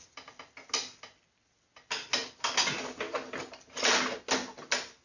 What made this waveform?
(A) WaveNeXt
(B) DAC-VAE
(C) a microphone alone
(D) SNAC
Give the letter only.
C